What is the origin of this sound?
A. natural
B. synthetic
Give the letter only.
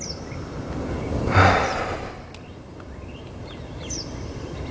A